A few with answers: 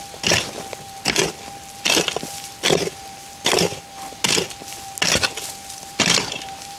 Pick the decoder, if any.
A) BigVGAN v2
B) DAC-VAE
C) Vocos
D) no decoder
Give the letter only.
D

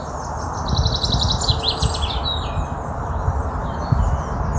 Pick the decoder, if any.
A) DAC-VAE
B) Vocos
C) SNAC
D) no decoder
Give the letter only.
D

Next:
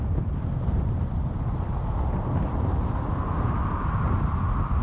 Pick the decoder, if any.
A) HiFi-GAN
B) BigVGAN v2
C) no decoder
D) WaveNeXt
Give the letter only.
C